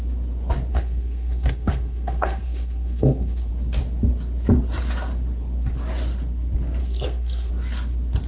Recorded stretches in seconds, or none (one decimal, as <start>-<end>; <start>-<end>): 0.0-0.7; 3.5-6.8; 7.5-8.3